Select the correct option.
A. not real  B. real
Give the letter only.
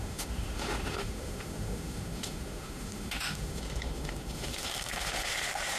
A